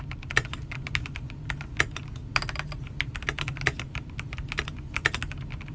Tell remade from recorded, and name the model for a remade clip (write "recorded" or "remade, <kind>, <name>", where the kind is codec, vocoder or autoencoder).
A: recorded